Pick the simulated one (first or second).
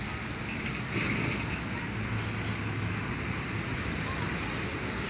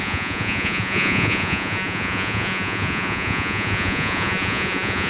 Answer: second